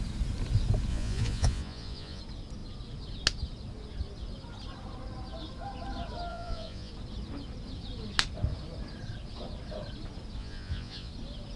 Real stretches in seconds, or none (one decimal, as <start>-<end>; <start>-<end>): 0.0-0.9; 2.2-6.3; 6.9-10.4; 11.1-11.6